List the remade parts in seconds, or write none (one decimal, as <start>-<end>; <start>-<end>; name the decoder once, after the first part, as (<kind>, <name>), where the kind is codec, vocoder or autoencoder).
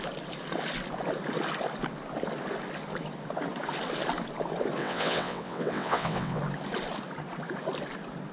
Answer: 4.8-6.4 (vocoder, WaveNeXt)